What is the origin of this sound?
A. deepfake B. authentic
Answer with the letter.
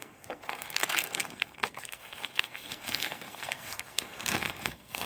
A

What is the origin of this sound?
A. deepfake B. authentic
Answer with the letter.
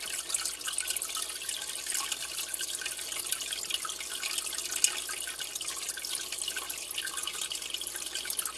B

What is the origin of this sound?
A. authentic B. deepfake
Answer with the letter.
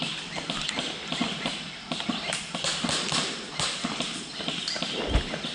A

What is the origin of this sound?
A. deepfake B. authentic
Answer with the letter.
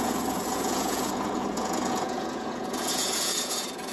A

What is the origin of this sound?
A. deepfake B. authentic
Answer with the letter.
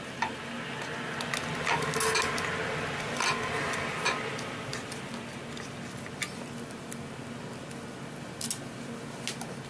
B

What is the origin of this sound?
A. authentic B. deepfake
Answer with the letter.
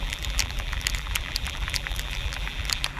B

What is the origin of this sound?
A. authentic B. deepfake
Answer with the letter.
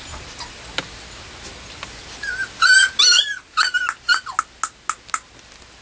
A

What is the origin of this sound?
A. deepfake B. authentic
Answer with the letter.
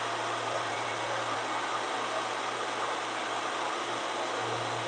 B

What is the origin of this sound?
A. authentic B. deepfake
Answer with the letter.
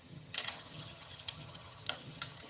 B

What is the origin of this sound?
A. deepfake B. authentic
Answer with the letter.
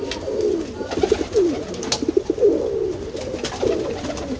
B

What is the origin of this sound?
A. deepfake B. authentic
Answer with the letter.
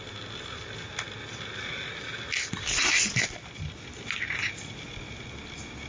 B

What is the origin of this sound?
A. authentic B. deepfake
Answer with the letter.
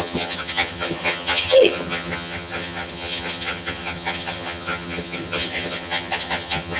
B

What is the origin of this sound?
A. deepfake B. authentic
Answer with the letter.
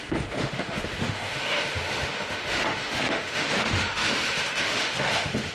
A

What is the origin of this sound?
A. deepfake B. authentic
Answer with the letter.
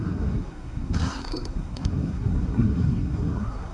A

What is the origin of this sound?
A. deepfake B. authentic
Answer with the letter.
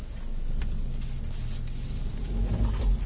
B